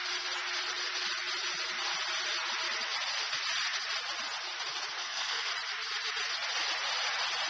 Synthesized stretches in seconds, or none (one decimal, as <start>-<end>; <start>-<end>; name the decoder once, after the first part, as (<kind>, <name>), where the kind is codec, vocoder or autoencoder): 5.0-5.5 (codec, SNAC)